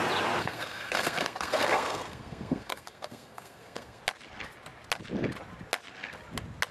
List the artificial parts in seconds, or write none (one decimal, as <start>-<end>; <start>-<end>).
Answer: 0.4-4.0